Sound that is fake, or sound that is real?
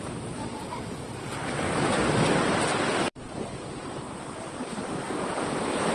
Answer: fake